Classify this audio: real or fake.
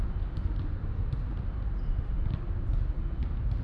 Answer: real